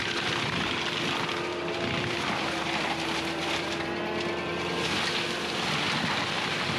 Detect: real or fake fake